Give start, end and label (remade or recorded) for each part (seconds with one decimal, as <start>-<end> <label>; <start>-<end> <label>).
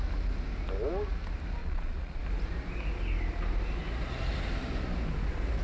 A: 0.0-1.6 recorded; 1.6-2.2 remade; 2.2-5.6 recorded